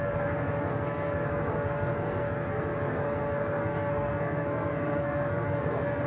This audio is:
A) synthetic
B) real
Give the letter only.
A